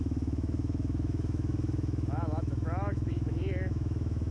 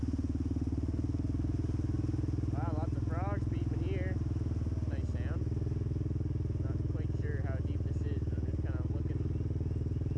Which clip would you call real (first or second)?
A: second